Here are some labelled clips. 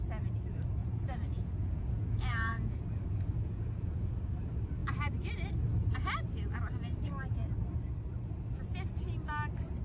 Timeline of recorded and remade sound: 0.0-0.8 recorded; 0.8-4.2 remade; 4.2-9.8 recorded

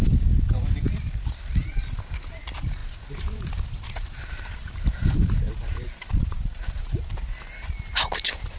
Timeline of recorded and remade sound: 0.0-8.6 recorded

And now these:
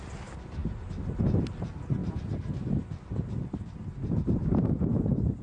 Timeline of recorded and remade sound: 0.0-5.4 recorded